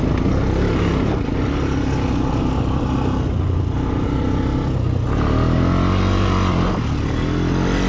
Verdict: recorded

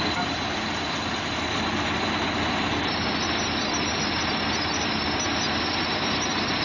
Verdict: recorded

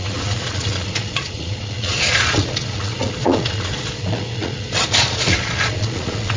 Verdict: remade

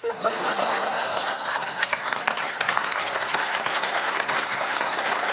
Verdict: remade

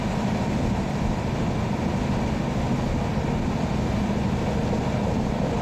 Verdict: recorded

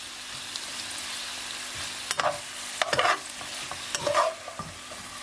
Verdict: recorded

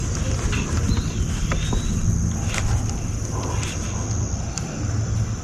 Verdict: recorded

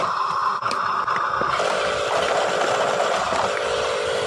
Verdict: recorded